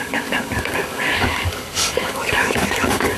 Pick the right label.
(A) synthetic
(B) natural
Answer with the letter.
A